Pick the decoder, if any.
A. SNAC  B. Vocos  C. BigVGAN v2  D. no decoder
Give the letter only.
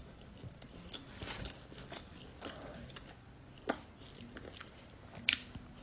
D